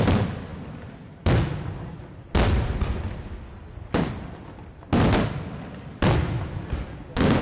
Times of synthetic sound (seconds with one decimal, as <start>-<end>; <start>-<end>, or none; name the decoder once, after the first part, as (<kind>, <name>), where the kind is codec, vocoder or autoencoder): none